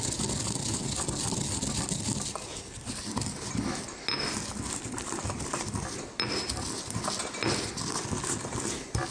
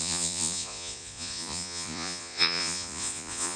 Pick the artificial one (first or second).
second